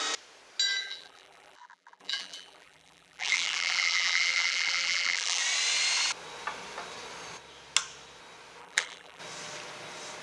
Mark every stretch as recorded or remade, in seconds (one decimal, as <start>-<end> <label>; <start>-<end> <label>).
0.0-0.8 recorded; 0.8-5.4 remade; 5.4-8.6 recorded; 8.6-9.2 remade; 9.2-10.2 recorded